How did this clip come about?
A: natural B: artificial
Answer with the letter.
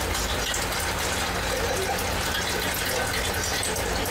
A